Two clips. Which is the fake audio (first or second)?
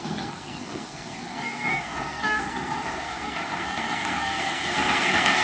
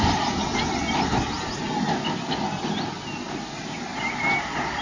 first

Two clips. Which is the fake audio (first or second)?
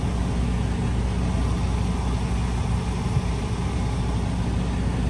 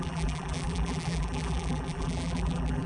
second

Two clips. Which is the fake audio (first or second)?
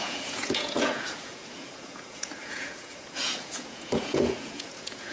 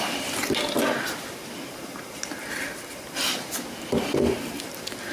first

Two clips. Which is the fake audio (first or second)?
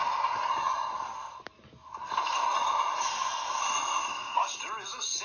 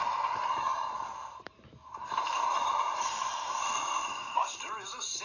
second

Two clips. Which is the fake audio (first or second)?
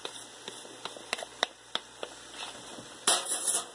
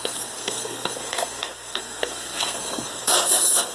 second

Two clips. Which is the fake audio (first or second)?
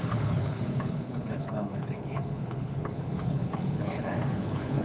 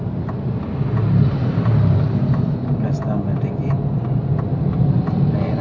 first